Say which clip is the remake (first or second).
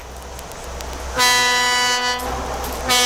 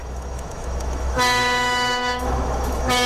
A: second